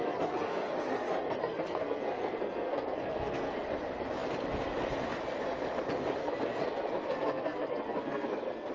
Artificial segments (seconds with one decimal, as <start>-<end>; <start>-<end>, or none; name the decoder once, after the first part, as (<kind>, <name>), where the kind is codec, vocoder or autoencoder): 0.0-3.5 (codec, SNAC); 6.2-8.7